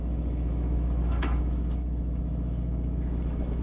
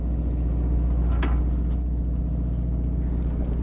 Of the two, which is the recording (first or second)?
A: second